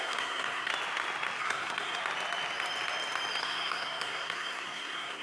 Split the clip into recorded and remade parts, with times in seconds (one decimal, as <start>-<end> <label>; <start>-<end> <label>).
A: 0.0-0.7 remade; 0.7-1.4 recorded; 1.4-2.0 remade; 2.0-3.4 recorded; 3.4-5.2 remade